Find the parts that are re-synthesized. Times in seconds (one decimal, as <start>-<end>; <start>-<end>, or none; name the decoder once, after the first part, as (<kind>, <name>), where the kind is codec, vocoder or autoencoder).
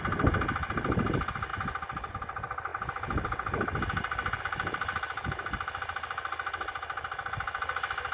none